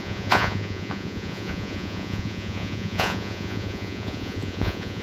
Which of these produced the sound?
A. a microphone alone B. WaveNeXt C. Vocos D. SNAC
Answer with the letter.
C